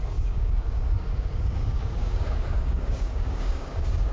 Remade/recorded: remade